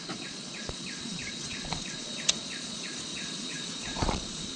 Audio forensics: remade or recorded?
remade